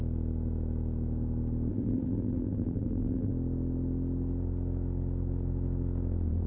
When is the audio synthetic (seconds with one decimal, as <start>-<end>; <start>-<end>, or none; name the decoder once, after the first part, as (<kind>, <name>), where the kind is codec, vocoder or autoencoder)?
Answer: 1.7-3.3 (vocoder, BigVGAN v2)